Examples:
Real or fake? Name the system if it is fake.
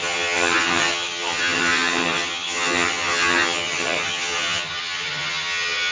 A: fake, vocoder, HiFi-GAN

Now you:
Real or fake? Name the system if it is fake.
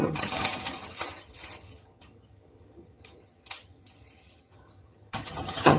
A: fake, vocoder, HiFi-GAN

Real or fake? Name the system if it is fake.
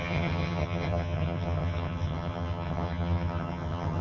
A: fake, vocoder, HiFi-GAN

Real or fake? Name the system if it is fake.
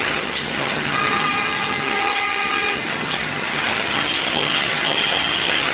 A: fake, vocoder, HiFi-GAN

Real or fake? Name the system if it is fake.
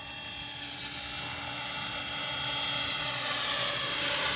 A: real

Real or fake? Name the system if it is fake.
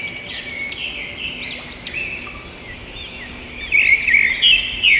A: real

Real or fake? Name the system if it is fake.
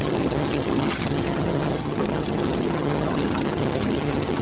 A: fake, vocoder, HiFi-GAN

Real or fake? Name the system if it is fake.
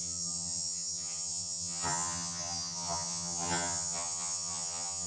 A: fake, vocoder, HiFi-GAN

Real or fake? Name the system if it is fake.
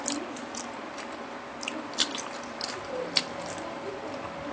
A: real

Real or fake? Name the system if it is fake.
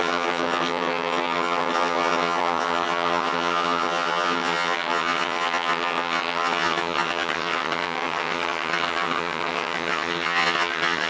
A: fake, vocoder, HiFi-GAN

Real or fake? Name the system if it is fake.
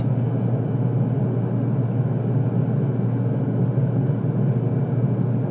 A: real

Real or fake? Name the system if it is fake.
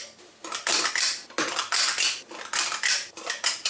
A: real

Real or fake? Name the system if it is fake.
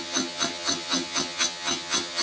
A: fake, vocoder, HiFi-GAN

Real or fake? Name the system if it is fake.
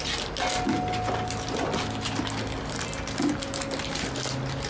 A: real